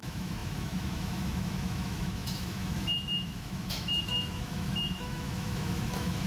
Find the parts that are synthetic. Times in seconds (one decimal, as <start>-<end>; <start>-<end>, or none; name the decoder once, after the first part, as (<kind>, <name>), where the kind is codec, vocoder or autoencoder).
0.0-6.3 (autoencoder, DAC-VAE)